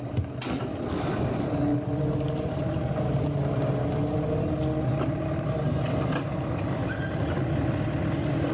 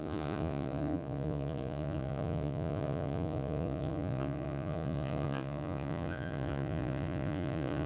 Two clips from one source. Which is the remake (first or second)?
second